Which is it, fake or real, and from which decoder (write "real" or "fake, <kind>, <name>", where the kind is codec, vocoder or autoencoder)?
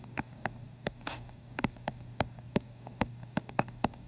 fake, codec, DAC